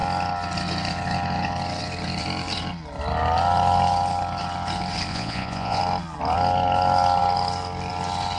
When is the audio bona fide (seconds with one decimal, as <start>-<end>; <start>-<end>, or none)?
0.0-5.1; 5.8-8.4